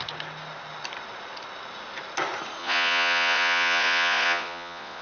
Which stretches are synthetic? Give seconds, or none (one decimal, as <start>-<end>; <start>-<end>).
2.6-5.0